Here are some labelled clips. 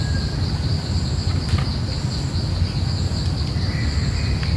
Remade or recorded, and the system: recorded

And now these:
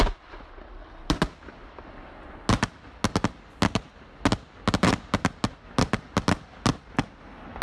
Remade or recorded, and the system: recorded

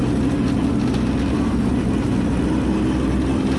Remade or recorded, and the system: recorded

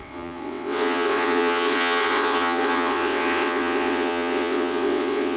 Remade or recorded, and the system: remade, vocoder, WaveNeXt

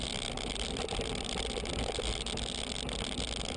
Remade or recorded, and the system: recorded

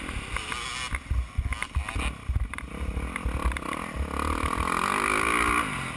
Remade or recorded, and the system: recorded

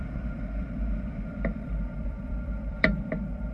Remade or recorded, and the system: remade, vocoder, BigVGAN v2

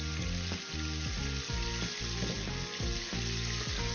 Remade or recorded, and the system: recorded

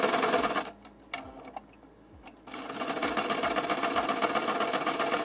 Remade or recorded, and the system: recorded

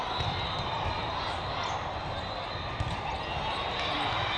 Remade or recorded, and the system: recorded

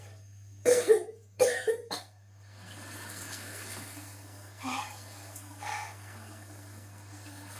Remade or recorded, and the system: remade, codec, SNAC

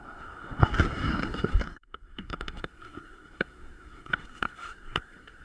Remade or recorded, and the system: remade, codec, SNAC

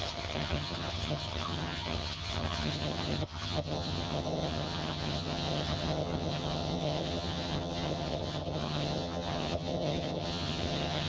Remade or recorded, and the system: remade, vocoder, HiFi-GAN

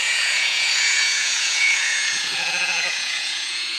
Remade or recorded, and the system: remade, vocoder, Vocos